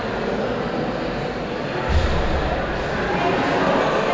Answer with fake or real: real